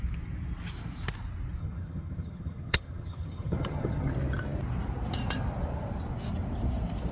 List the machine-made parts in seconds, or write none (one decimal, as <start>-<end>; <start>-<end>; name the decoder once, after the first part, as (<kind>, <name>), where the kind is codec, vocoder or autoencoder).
1.6-4.1 (vocoder, HiFi-GAN)